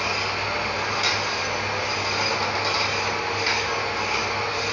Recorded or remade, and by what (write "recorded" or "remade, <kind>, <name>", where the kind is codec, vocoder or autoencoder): recorded